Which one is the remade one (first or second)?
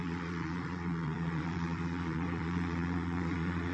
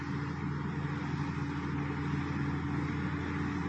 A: first